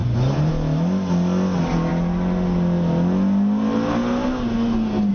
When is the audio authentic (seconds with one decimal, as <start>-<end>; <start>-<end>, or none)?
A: 0.0-5.1